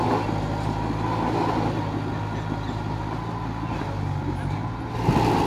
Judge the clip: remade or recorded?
recorded